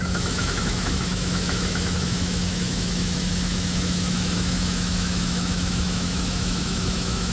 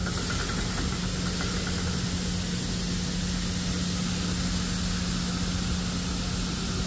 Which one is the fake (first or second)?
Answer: first